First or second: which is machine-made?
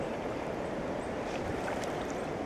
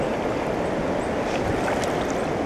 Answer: first